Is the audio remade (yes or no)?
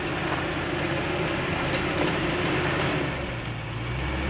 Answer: no